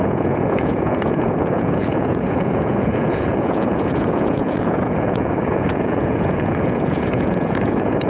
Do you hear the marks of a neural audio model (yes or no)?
yes